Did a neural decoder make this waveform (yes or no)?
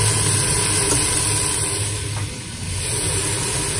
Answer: no